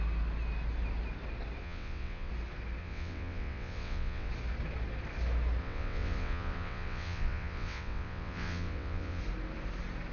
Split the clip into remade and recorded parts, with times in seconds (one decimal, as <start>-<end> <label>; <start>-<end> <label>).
0.0-1.6 recorded; 1.6-2.3 remade; 2.3-2.8 recorded; 2.8-4.3 remade; 4.3-5.6 recorded; 5.6-9.2 remade; 9.2-10.1 recorded